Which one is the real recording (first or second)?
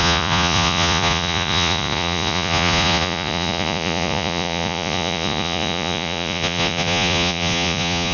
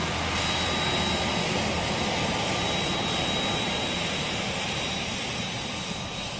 second